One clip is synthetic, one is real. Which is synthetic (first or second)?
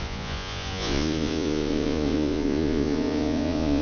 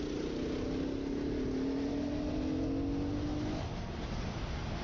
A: first